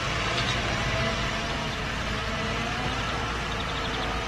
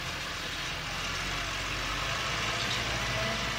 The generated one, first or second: first